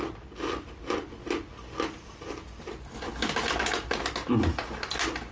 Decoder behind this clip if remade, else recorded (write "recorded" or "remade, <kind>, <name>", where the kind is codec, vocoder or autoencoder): recorded